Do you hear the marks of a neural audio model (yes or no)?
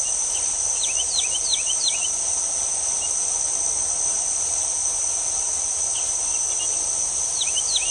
no